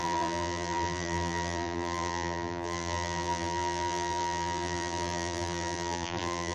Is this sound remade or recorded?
remade